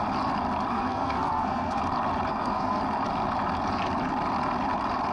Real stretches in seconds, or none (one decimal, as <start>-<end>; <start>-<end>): 0.0-0.7; 1.8-2.3; 2.8-5.1